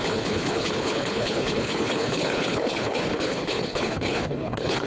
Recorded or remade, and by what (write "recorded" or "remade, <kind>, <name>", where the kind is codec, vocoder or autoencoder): remade, codec, HILCodec